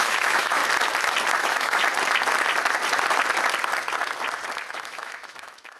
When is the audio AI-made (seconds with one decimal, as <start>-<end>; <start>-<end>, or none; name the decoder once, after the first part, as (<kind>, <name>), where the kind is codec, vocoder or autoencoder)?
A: 0.0-0.6 (autoencoder, DAC-VAE); 1.4-1.8; 4.7-5.8